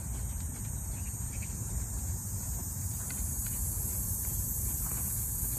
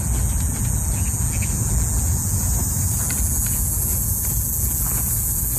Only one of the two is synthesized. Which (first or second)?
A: first